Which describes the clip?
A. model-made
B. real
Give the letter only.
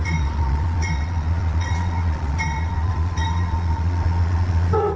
A